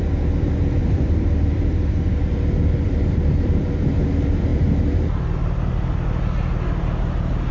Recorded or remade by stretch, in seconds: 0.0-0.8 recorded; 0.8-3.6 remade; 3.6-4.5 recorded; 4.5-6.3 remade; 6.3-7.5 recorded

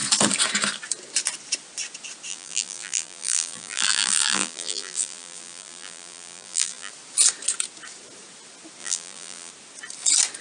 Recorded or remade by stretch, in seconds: 0.0-2.3 recorded; 2.3-6.9 remade; 6.9-8.8 recorded; 8.8-9.5 remade; 9.5-10.4 recorded

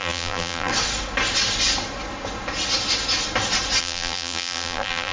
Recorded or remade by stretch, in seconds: 0.0-0.7 remade; 0.7-3.8 recorded; 3.8-5.1 remade

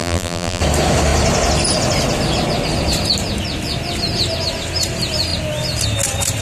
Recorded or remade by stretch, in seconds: 0.0-0.6 remade; 0.6-6.4 recorded

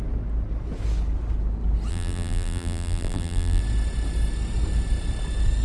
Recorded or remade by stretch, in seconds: 0.0-1.9 recorded; 1.9-3.6 remade; 3.6-5.6 recorded